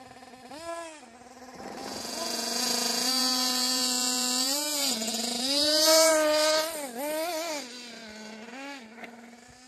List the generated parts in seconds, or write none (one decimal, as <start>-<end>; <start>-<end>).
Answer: 1.8-6.1